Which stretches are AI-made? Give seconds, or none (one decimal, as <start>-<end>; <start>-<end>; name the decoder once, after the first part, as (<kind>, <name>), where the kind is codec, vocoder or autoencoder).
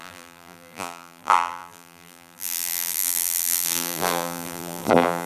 0.0-5.3 (vocoder, BigVGAN v2)